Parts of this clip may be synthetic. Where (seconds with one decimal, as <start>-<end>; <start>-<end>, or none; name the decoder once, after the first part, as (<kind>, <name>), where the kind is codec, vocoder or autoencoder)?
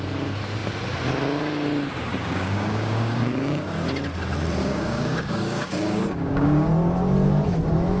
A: 2.1-3.7 (codec, DAC); 4.6-6.7